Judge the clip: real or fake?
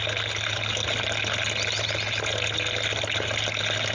real